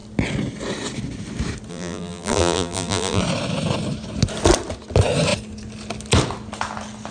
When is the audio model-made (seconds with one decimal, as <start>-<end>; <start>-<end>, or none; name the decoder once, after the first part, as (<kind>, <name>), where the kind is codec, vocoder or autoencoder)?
1.7-3.2 (vocoder, BigVGAN v2)